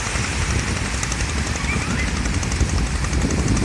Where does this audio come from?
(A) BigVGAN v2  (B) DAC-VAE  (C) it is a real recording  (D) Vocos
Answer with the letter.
C